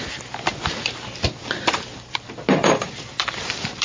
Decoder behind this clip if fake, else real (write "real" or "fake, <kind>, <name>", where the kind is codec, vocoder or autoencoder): real